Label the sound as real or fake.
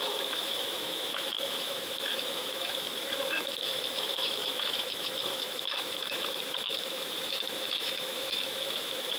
fake